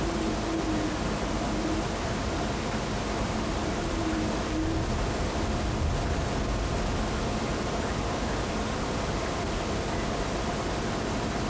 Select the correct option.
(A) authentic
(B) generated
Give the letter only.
A